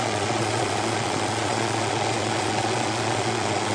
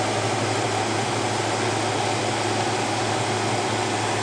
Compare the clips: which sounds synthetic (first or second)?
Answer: first